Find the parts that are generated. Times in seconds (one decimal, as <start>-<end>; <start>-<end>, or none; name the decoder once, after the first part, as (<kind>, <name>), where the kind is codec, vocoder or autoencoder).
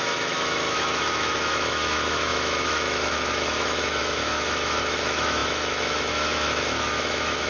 0.0-7.5 (autoencoder, DAC-VAE)